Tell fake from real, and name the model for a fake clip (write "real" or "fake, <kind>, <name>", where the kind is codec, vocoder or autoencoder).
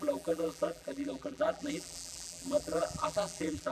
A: fake, vocoder, BigVGAN v2